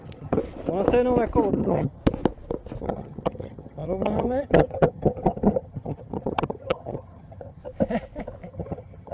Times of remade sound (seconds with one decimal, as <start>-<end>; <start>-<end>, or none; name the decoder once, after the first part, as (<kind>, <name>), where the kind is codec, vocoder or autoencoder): 0.0-0.4 (vocoder, HiFi-GAN); 1.5-2.0; 2.8-7.6; 8.5-9.1